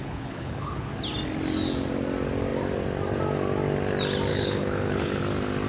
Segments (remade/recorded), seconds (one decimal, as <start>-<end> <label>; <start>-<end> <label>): 0.0-0.9 remade; 0.9-4.3 recorded; 4.3-5.2 remade; 5.2-5.7 recorded